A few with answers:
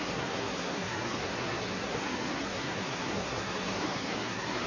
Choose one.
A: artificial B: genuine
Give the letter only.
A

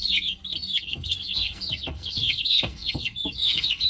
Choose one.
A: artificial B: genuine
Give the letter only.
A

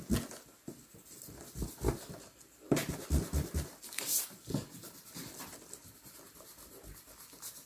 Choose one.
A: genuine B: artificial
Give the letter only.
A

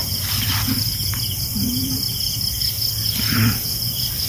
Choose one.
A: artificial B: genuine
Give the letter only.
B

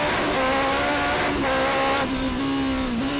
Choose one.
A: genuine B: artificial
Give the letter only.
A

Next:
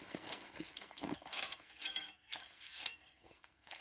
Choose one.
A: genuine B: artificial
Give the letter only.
B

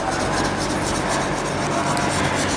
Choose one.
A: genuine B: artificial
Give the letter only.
A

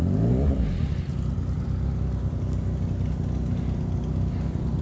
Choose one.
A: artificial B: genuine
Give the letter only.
B